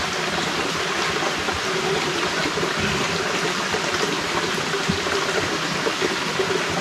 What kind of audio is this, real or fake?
real